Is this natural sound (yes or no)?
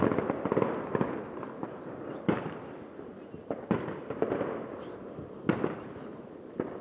yes